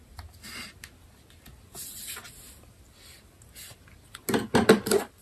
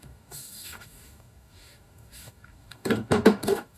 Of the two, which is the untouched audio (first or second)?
first